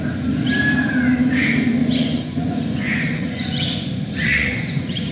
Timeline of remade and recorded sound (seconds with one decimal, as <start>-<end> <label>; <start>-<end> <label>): 0.0-1.8 recorded; 1.8-5.1 remade